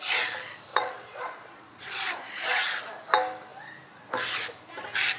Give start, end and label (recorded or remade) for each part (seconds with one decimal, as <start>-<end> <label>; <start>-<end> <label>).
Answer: 0.0-0.7 recorded; 0.7-2.6 remade; 2.6-5.2 recorded